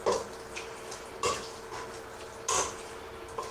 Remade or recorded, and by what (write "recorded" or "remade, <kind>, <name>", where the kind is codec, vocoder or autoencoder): recorded